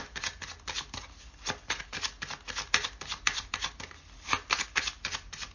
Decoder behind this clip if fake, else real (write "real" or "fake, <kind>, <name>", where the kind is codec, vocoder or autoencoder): real